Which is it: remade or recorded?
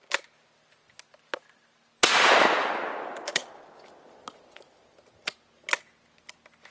recorded